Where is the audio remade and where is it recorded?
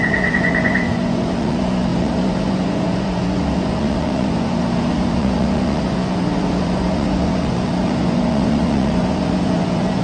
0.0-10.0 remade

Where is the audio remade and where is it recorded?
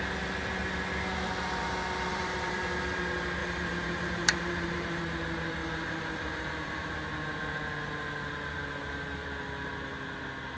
0.0-2.1 recorded; 2.1-3.0 remade; 3.0-3.4 recorded; 3.4-5.0 remade; 5.0-5.6 recorded; 5.6-6.9 remade; 6.9-10.6 recorded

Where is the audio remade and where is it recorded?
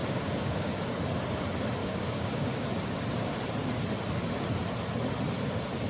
0.0-0.7 remade; 0.7-1.8 recorded; 1.8-2.7 remade; 2.7-5.9 recorded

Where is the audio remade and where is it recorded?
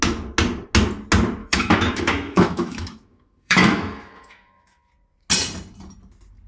0.0-1.4 recorded; 1.4-4.9 remade; 4.9-6.5 recorded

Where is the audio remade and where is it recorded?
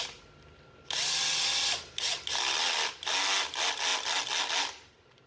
0.0-5.3 recorded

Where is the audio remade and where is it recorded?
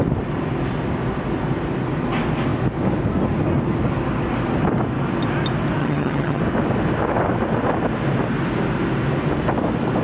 0.0-5.8 recorded; 5.8-6.4 remade; 6.4-10.0 recorded